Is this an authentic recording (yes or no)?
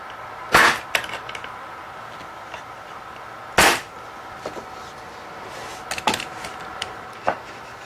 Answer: yes